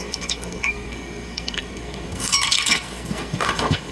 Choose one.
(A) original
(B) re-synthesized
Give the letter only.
B